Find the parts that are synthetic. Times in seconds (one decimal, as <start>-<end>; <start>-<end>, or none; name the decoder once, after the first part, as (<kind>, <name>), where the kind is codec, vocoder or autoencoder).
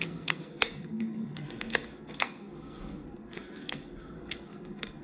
0.0-5.0 (codec, SNAC)